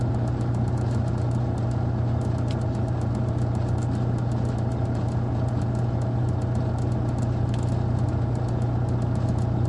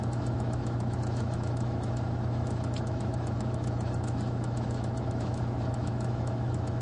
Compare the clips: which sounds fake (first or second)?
second